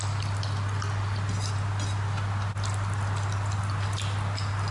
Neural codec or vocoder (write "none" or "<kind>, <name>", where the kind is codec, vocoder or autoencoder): none